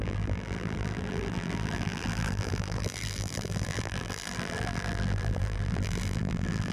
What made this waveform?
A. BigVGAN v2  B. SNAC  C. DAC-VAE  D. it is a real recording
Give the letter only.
A